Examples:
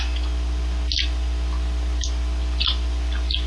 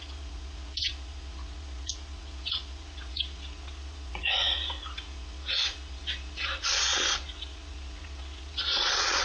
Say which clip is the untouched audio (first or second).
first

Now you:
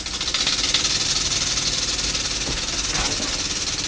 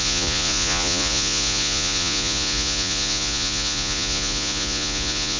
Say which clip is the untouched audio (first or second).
first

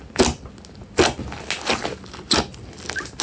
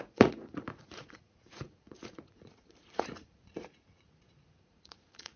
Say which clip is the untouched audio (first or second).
first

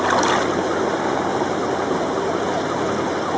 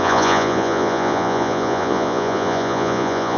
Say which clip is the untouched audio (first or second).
first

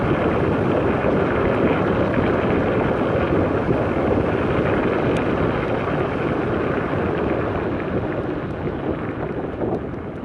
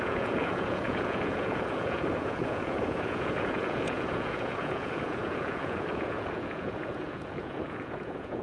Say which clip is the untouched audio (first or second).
first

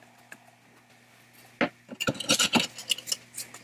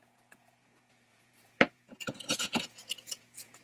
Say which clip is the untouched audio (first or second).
first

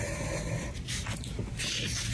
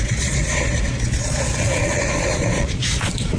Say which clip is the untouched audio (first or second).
first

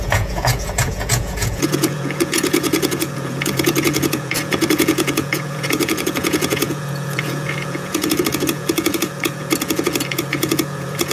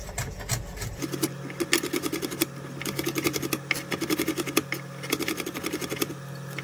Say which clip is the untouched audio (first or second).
second